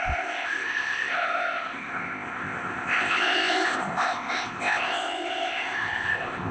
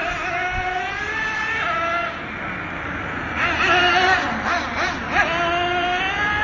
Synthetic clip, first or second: first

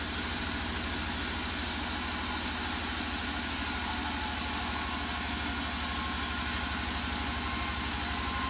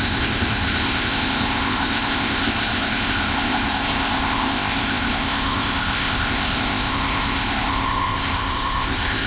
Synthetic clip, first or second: second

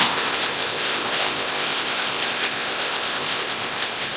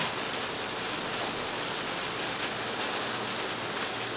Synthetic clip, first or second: first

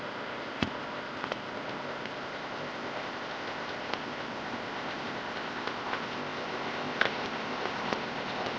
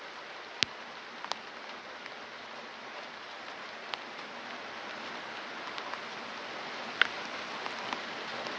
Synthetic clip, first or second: first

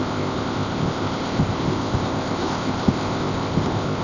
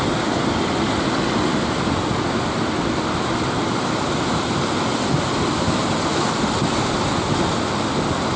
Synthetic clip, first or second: first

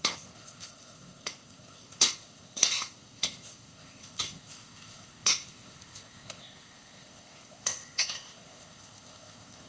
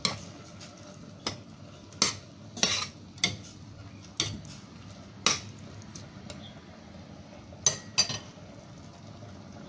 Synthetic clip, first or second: first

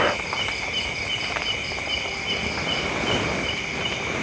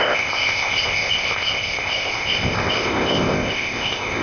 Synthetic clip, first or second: second